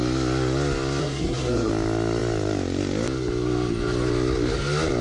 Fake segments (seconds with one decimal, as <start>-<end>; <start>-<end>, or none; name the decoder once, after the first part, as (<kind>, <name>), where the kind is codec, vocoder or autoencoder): 1.0-1.7 (codec, SNAC)